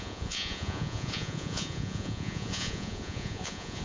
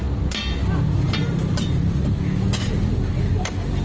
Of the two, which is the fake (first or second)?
first